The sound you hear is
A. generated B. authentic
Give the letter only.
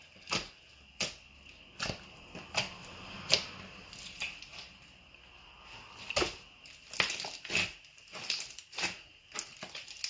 B